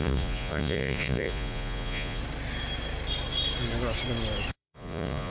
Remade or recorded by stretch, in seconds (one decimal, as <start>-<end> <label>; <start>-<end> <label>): 0.0-2.2 remade; 2.2-4.5 recorded; 4.5-5.3 remade

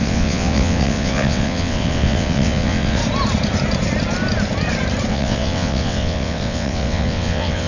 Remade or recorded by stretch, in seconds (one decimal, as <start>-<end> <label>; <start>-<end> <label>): 0.0-3.0 remade; 3.0-5.1 recorded; 5.1-7.7 remade

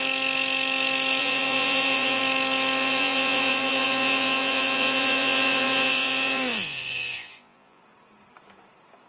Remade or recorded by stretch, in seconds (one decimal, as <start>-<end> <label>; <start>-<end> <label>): 0.0-1.2 recorded; 1.2-2.2 remade; 2.2-2.8 recorded; 2.8-7.8 remade; 7.8-9.1 recorded

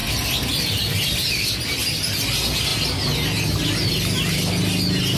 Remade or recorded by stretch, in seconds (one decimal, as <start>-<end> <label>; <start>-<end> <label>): 0.0-1.6 remade; 1.6-5.2 recorded

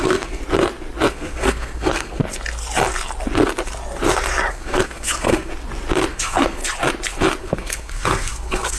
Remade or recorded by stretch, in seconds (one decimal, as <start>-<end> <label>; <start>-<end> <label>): 0.0-0.4 remade; 0.4-1.1 recorded; 1.1-2.2 remade; 2.2-4.5 recorded; 4.5-5.5 remade; 5.5-6.1 recorded; 6.1-6.6 remade; 6.6-7.4 recorded; 7.4-8.8 remade